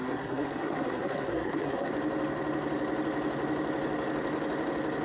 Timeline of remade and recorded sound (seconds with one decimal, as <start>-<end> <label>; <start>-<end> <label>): 0.0-1.9 remade; 1.9-5.0 recorded